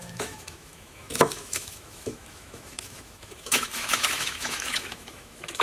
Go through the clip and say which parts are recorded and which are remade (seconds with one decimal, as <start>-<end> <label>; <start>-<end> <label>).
0.0-5.6 remade